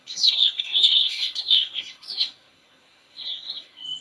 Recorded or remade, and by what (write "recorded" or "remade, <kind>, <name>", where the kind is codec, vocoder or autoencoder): remade, codec, SNAC